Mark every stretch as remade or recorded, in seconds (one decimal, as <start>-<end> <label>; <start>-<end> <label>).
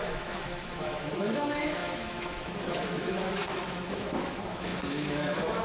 0.0-5.6 remade